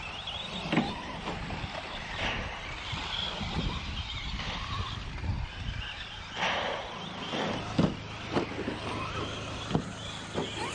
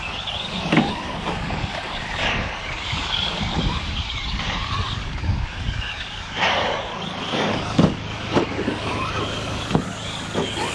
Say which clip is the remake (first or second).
second